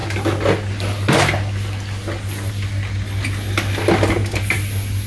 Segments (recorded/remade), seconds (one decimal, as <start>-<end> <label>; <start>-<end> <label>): 0.0-5.1 recorded